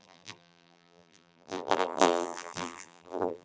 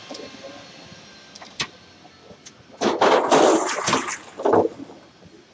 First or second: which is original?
second